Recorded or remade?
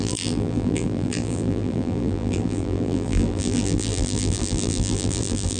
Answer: remade